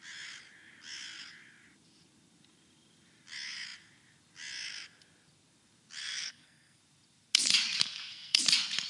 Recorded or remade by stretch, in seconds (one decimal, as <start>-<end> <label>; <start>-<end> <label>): 0.0-6.0 recorded; 6.0-6.8 remade; 6.8-7.8 recorded; 7.8-8.4 remade; 8.4-8.9 recorded